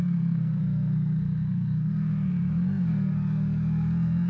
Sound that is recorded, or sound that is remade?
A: remade